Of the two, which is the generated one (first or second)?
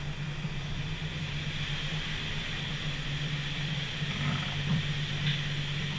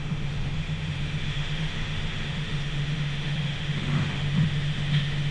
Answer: second